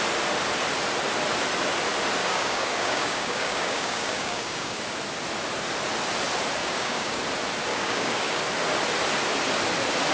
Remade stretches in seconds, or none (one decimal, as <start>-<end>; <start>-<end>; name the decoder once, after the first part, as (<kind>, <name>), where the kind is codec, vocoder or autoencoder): 2.2-4.8 (codec, DAC); 6.6-7.2; 7.7-8.4